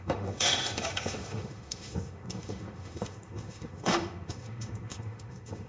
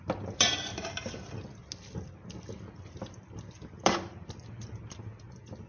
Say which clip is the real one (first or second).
second